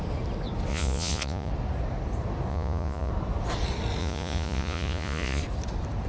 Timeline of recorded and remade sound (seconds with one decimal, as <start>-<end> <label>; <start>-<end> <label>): 0.0-0.7 recorded; 0.7-1.5 remade; 1.5-2.5 recorded; 2.5-3.1 remade; 3.1-4.0 recorded; 4.0-5.4 remade; 5.4-6.1 recorded